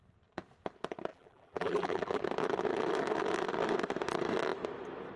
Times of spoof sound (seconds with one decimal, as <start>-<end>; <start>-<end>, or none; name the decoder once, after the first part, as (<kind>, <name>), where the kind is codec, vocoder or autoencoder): 1.1-2.2 (vocoder, BigVGAN v2)